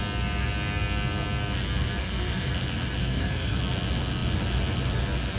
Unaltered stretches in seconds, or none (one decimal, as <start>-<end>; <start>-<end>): 0.0-2.0; 2.5-3.0; 3.6-5.4